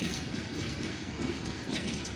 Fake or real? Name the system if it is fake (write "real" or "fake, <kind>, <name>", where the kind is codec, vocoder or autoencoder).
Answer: fake, codec, SNAC